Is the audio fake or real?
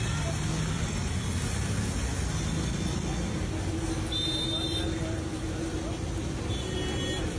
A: real